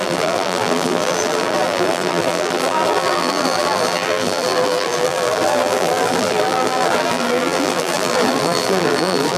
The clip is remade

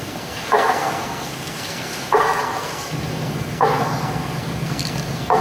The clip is remade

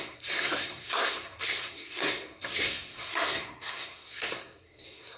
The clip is remade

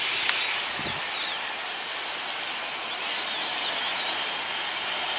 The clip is recorded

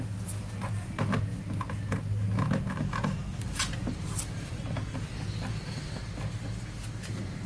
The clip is recorded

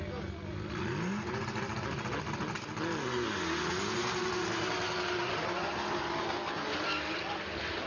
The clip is recorded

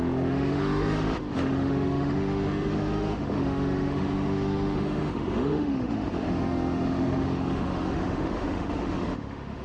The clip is remade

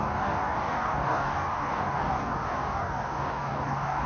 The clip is remade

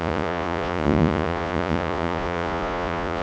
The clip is remade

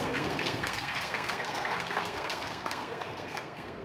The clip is remade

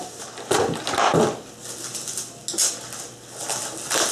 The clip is recorded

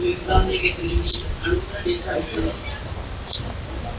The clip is recorded